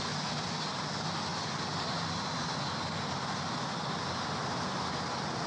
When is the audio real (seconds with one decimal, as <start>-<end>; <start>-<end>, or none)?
0.0-1.3; 1.9-5.5